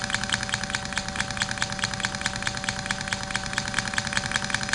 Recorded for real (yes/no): yes